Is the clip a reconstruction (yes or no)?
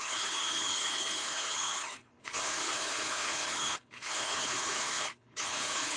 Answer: yes